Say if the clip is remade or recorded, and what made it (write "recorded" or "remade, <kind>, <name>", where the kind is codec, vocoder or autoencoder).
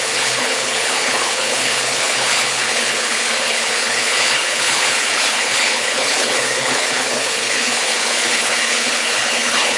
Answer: remade, codec, HILCodec